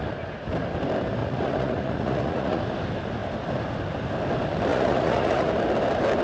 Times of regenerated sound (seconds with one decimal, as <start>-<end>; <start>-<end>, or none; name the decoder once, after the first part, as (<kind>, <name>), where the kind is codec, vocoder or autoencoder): 1.2-2.6 (vocoder, Vocos); 4.7-5.5